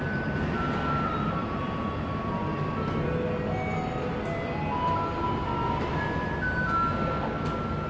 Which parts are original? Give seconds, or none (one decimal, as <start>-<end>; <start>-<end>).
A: 0.0-1.4; 2.0-7.9